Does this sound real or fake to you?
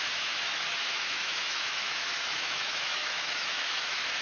fake